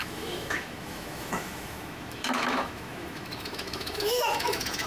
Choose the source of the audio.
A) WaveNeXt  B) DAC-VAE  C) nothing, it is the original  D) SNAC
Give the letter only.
B